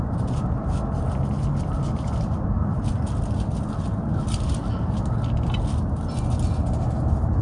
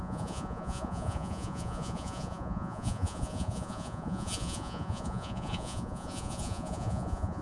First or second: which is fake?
second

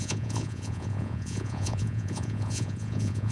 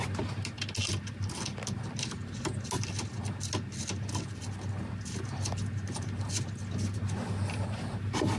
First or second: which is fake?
first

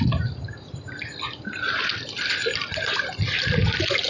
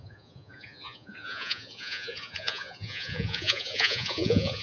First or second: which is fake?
second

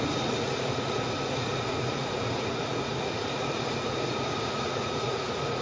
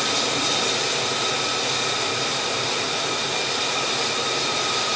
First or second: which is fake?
first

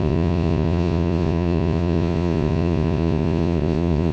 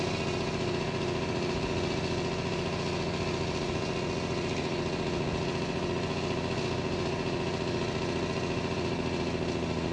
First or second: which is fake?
first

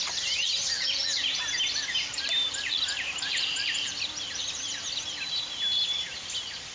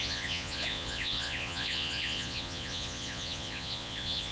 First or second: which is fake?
second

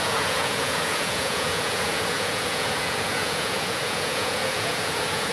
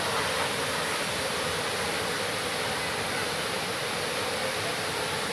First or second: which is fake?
first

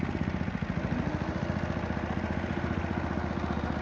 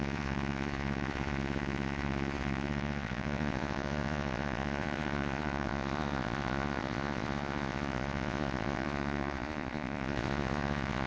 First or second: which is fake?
second